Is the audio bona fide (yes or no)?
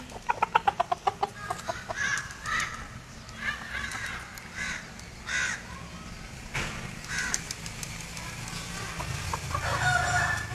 yes